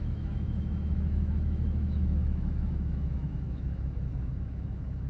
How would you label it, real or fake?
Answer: fake